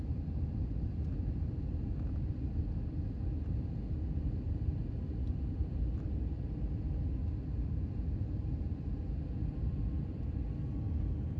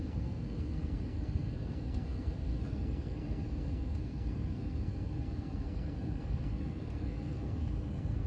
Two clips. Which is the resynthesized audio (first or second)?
second